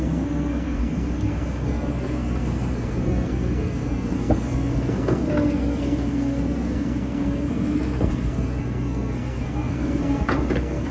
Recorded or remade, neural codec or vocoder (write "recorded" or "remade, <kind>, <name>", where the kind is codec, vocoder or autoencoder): remade, codec, SNAC